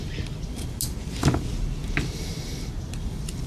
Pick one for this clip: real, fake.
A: real